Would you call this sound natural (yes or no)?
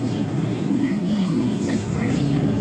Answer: no